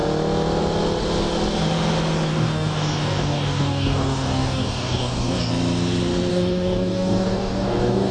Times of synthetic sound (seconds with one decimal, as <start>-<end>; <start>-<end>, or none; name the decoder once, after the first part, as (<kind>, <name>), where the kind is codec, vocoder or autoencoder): 2.3-5.5 (codec, DAC); 6.3-8.1